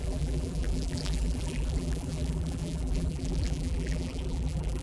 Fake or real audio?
fake